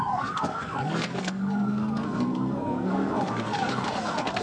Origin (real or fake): fake